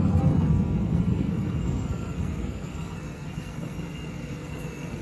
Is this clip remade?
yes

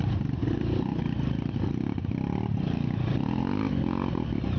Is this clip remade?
no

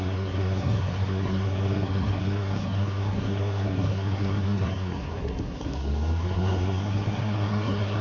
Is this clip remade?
yes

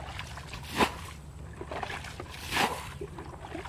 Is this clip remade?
no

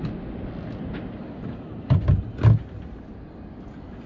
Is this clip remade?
no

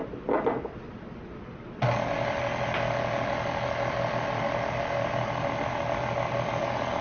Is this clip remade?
no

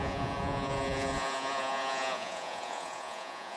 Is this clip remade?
yes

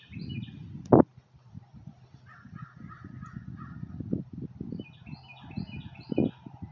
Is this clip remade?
no